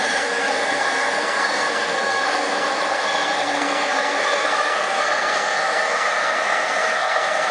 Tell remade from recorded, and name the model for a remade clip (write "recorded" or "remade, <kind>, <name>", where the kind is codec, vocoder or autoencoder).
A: remade, codec, SNAC